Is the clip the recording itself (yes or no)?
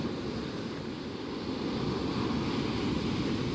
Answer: yes